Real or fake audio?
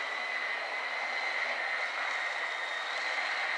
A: real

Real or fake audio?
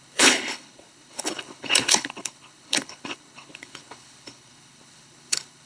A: fake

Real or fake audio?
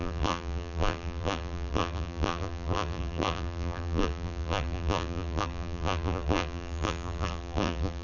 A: fake